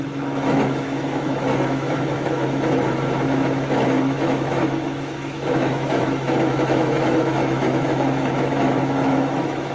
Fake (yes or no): yes